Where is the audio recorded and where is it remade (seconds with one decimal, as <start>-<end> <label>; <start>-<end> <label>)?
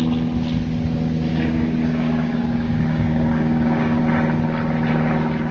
0.0-1.3 recorded; 1.3-4.0 remade; 4.0-5.5 recorded